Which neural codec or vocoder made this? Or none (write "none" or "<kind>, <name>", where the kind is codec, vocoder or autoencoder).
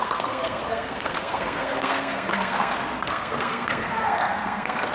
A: codec, SNAC